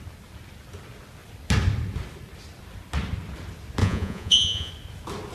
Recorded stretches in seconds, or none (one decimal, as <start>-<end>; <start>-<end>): 0.0-3.8; 4.7-5.3